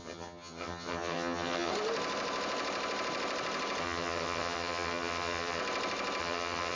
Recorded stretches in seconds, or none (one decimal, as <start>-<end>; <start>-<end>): 1.7-3.8; 5.6-6.2